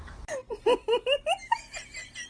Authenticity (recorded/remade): recorded